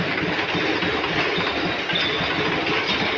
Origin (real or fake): real